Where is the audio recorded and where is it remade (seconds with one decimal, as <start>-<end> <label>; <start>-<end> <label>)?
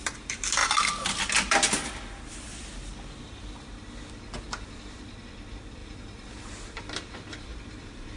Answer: 0.0-5.8 recorded; 5.8-6.8 remade; 6.8-7.5 recorded; 7.5-8.2 remade